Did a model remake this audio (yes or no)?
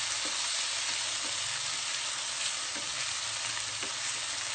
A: no